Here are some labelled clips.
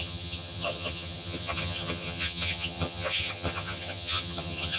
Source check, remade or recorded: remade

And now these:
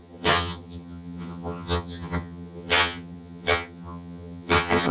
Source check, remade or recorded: remade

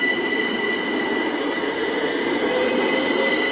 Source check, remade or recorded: recorded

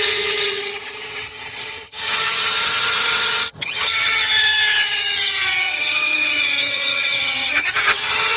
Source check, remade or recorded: remade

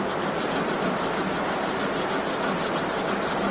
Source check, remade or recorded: recorded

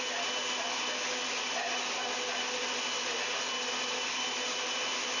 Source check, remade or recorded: recorded